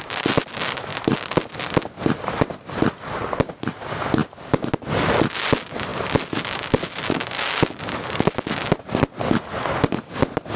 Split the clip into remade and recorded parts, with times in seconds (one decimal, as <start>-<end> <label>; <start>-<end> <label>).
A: 0.0-10.6 recorded

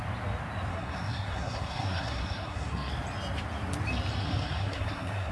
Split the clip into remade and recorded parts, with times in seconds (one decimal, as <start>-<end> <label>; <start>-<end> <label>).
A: 0.0-0.7 recorded; 0.7-2.9 remade; 2.9-4.2 recorded; 4.2-5.3 remade

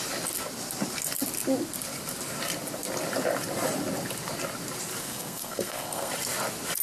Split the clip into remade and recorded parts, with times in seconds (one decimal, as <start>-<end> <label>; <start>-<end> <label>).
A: 0.0-5.0 recorded; 5.0-6.1 remade; 6.1-6.8 recorded

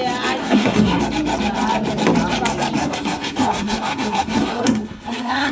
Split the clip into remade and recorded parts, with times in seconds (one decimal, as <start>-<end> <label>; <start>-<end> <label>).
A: 0.0-0.4 recorded; 0.4-1.0 remade; 1.0-2.8 recorded; 2.8-5.5 remade

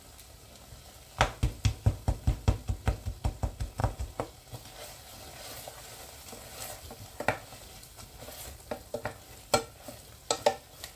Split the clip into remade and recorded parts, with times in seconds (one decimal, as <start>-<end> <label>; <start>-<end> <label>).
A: 0.0-11.0 recorded

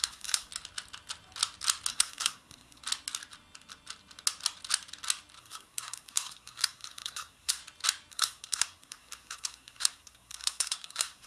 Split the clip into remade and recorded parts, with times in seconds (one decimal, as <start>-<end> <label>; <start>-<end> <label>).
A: 0.0-0.5 remade; 0.5-1.9 recorded; 1.9-2.8 remade; 2.8-5.4 recorded; 5.4-7.6 remade; 7.6-8.1 recorded; 8.1-11.3 remade

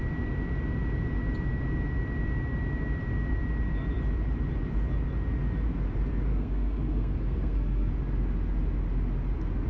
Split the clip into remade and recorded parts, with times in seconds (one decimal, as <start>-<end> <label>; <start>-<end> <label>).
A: 0.0-6.3 recorded; 6.3-7.9 remade; 7.9-9.7 recorded

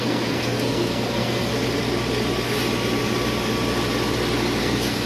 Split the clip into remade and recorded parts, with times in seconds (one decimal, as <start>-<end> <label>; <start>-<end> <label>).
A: 0.0-1.5 remade; 1.5-4.6 recorded; 4.6-5.1 remade